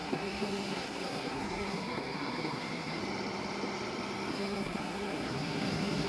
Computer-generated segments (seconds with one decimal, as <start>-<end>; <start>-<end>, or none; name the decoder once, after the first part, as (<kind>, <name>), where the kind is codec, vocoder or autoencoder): 0.0-3.0 (codec, SNAC); 4.3-6.1

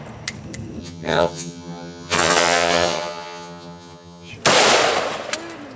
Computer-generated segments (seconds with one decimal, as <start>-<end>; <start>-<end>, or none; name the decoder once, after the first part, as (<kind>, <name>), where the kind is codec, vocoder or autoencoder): 0.8-4.3 (vocoder, HiFi-GAN)

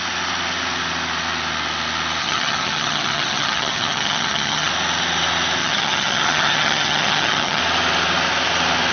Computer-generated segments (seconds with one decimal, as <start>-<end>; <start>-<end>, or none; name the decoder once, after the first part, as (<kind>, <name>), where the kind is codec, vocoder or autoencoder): 2.2-4.7 (vocoder, HiFi-GAN); 5.6-7.6